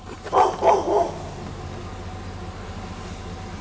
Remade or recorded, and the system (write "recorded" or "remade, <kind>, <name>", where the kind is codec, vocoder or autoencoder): recorded